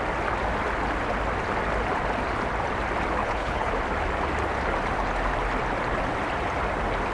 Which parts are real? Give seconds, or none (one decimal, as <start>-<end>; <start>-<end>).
0.0-3.2; 3.7-7.1